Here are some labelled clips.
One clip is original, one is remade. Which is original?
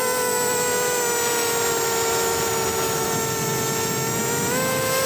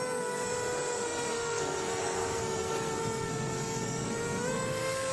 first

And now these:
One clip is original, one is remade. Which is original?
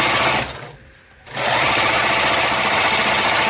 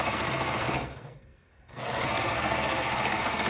first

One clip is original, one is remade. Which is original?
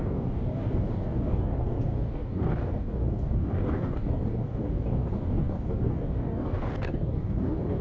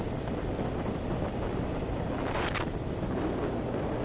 second